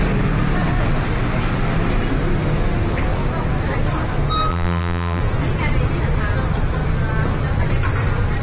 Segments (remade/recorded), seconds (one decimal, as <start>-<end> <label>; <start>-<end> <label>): 0.0-4.5 recorded; 4.5-5.2 remade; 5.2-8.4 recorded